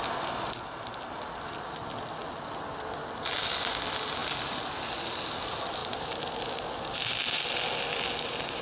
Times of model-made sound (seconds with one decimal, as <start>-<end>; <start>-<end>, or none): 5.8-6.9